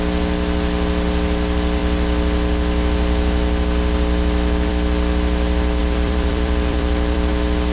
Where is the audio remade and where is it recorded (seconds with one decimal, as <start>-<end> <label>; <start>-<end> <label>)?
0.0-5.8 recorded; 5.8-7.3 remade; 7.3-7.7 recorded